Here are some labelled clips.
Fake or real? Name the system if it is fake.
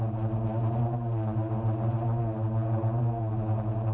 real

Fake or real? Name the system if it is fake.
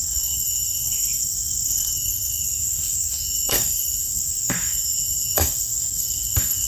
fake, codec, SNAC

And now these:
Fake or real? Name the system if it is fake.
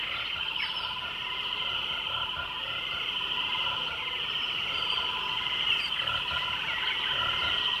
real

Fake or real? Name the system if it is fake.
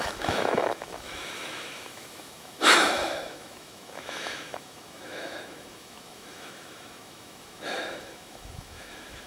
fake, autoencoder, DAC-VAE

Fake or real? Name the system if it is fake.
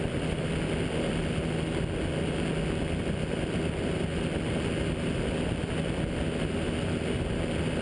real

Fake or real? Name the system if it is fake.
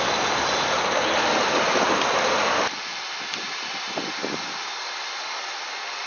real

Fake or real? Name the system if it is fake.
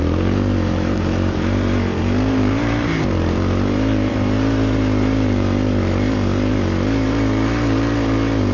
fake, vocoder, BigVGAN v2